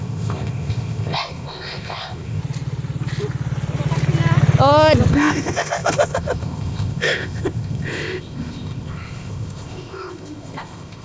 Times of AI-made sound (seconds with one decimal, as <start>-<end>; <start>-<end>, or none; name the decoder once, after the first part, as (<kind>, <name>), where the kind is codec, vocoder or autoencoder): 0.0-2.4 (codec, ZipCodec); 5.1-11.0